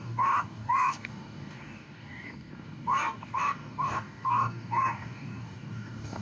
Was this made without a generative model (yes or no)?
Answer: no